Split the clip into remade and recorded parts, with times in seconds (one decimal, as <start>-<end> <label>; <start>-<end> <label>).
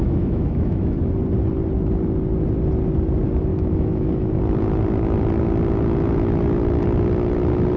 0.0-1.0 remade; 1.0-3.5 recorded; 3.5-4.4 remade; 4.4-7.8 recorded